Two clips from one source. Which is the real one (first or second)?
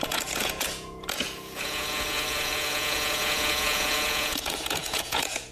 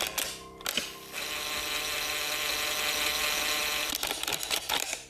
second